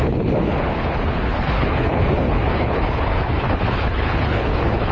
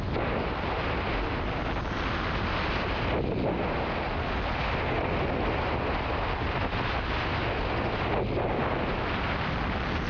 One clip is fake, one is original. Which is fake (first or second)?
first